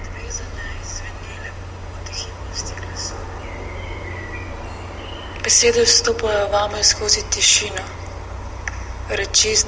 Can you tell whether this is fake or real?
real